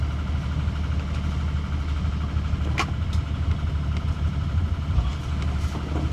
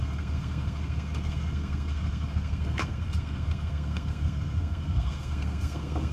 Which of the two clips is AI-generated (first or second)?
second